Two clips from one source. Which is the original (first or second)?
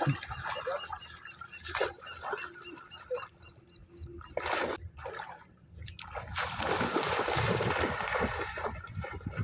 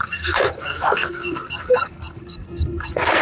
first